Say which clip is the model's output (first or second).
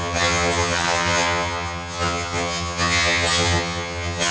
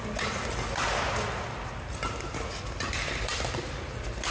first